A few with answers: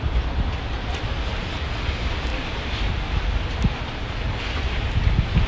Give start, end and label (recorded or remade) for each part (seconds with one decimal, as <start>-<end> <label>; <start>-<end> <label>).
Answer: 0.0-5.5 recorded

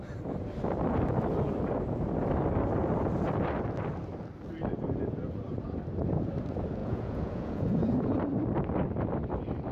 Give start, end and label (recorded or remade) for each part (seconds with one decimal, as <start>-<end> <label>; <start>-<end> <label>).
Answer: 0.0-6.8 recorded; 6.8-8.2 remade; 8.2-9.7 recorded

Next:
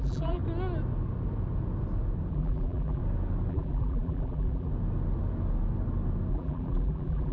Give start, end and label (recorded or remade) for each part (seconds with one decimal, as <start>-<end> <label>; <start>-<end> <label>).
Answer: 0.0-0.4 remade; 0.4-2.3 recorded; 2.3-3.0 remade; 3.0-3.5 recorded; 3.5-4.7 remade; 4.7-6.3 recorded; 6.3-7.3 remade

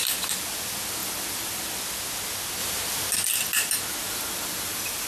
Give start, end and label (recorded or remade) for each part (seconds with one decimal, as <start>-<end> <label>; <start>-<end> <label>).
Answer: 0.0-1.0 recorded; 1.0-1.6 remade; 1.6-4.0 recorded; 4.0-5.1 remade